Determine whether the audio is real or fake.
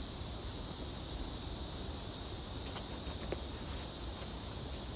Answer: real